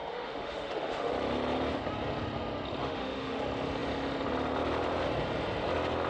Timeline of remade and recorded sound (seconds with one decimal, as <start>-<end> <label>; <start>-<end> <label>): 0.0-1.1 remade; 1.1-2.8 recorded; 2.8-3.4 remade; 3.4-6.1 recorded